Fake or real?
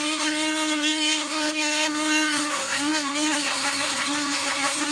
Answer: fake